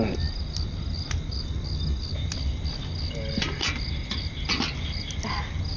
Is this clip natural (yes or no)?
yes